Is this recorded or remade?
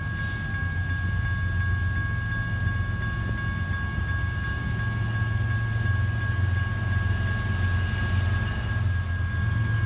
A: recorded